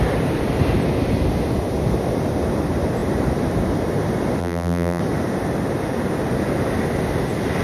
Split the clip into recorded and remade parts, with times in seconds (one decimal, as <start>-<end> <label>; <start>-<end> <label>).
0.0-4.4 recorded; 4.4-5.0 remade; 5.0-7.6 recorded